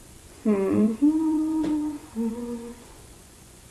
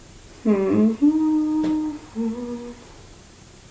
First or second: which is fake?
first